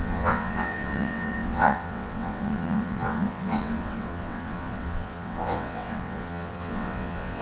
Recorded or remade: remade